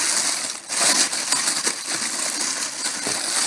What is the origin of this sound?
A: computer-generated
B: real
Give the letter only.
B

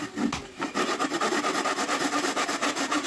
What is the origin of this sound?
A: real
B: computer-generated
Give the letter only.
A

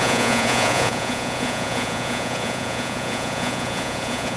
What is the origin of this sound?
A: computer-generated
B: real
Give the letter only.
A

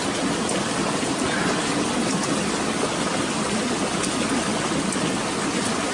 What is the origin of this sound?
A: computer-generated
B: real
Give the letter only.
B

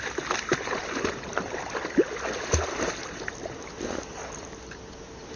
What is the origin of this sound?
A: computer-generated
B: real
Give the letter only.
B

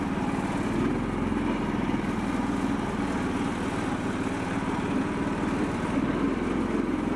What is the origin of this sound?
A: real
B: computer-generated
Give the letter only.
A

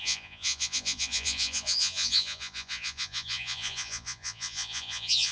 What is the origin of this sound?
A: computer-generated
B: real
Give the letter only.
A